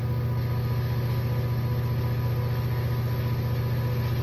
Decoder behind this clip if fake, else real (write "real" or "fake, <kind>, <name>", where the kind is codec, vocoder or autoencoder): real